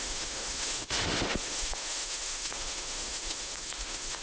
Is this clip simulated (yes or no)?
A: yes